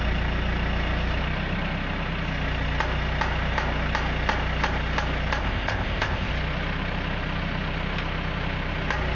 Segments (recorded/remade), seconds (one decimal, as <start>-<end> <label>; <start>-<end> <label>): 0.0-5.4 recorded; 5.4-6.3 remade; 6.3-9.2 recorded